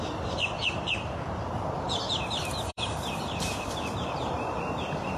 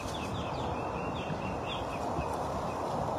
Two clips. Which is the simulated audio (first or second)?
first